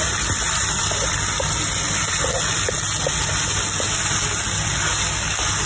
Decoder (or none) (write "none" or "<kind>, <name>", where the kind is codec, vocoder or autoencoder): none